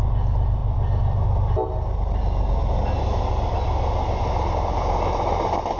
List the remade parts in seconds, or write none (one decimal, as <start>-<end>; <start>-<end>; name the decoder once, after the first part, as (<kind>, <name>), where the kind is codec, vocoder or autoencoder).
none